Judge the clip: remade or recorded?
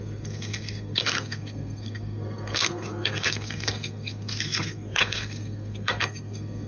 remade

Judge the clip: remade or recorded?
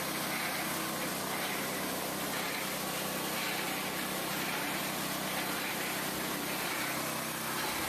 recorded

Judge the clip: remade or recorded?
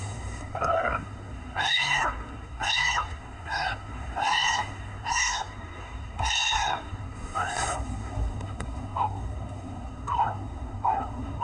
remade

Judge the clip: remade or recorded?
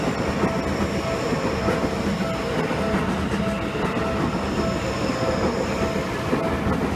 recorded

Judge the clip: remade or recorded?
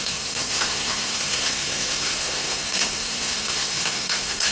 remade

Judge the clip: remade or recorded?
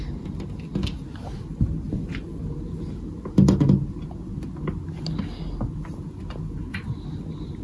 recorded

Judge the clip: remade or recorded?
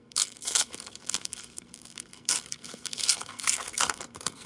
remade